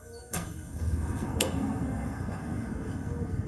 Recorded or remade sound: remade